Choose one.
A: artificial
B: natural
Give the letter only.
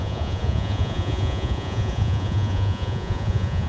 A